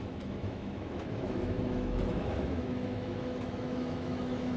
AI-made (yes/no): yes